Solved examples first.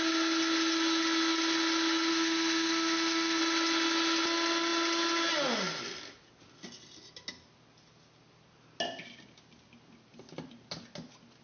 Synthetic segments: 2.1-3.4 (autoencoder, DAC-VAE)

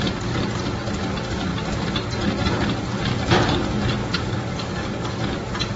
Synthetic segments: 3.1-3.6 (codec, DAC); 4.0-5.1

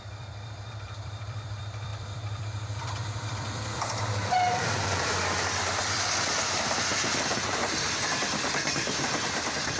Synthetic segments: 0.0-6.9 (vocoder, BigVGAN v2); 8.1-9.8

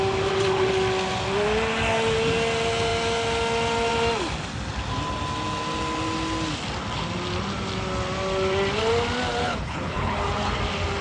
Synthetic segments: 9.4-10.2 (codec, HILCodec)